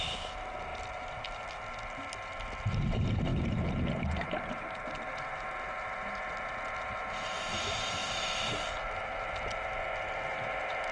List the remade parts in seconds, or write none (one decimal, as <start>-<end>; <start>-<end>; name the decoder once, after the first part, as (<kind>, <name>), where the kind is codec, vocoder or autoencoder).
none